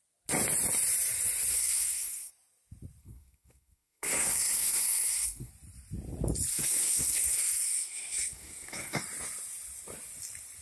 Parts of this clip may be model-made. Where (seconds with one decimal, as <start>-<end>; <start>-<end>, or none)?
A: 1.5-2.3; 3.0-5.5; 6.5-9.0